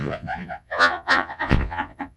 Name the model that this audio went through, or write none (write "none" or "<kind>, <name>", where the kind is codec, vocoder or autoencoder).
vocoder, Vocos